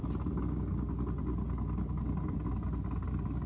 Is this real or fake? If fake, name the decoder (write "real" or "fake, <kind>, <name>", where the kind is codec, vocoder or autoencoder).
real